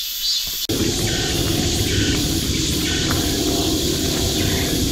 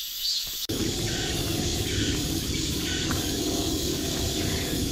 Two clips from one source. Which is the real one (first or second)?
first